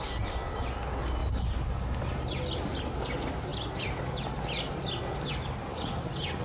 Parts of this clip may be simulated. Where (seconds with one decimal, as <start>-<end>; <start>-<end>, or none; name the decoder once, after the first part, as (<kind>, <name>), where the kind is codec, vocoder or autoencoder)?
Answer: none